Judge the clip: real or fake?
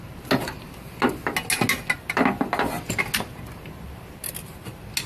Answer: real